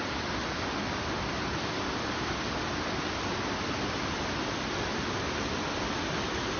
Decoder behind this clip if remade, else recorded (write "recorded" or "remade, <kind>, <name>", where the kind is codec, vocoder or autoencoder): recorded